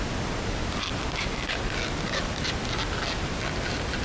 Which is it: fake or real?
real